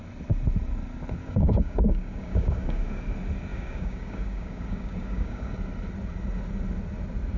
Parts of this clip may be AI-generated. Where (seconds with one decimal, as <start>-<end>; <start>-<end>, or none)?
1.2-3.0; 3.5-5.5